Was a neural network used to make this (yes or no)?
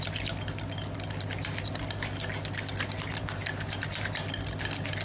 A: no